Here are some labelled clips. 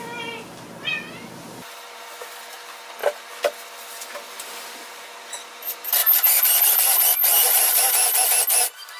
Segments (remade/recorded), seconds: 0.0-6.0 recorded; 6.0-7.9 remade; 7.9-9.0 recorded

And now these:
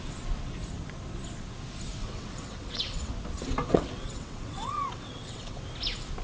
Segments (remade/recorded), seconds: 0.0-2.0 recorded; 2.0-3.1 remade; 3.1-3.6 recorded; 3.6-5.6 remade; 5.6-6.2 recorded

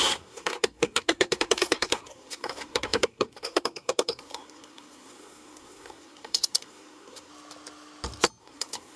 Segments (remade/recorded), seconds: 0.0-7.3 remade; 7.3-8.4 recorded; 8.4-9.0 remade

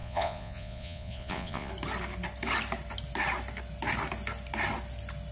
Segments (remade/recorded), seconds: 0.0-1.7 remade; 1.7-5.3 recorded